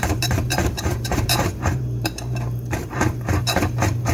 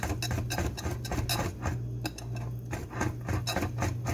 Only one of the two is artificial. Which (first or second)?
first